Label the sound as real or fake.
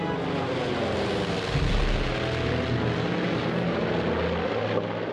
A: real